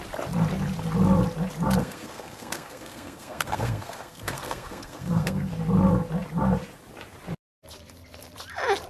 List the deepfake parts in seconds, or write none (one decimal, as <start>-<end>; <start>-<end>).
1.8-5.5